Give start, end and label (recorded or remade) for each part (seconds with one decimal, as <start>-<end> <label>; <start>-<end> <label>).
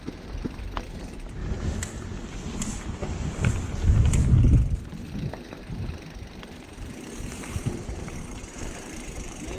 0.0-1.4 remade; 1.4-5.6 recorded; 5.6-9.6 remade